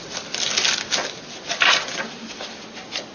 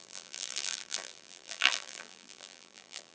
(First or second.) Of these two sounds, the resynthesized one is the second